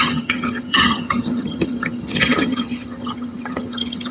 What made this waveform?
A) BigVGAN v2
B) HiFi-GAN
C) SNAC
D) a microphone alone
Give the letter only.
B